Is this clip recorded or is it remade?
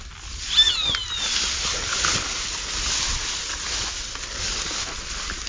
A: recorded